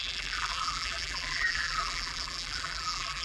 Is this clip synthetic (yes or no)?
yes